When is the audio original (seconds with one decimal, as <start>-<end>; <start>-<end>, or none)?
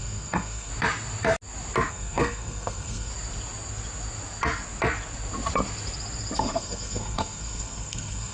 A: 0.7-1.9; 3.1-6.4